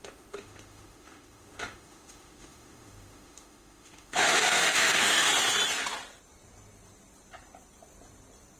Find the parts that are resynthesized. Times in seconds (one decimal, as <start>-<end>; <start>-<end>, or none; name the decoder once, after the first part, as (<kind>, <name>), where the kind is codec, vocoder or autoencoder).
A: 0.0-5.3 (autoencoder, DAC-VAE)